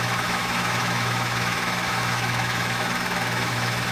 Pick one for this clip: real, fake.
fake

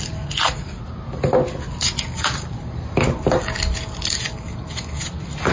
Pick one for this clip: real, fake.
real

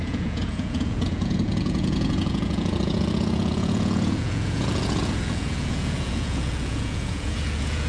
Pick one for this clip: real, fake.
fake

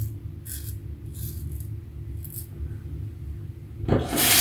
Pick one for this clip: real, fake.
real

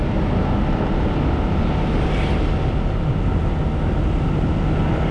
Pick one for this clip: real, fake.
real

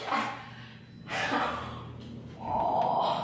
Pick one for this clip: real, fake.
real